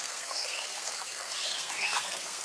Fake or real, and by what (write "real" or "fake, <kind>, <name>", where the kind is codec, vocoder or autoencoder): fake, codec, SNAC